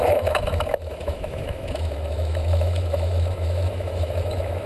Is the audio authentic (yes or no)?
no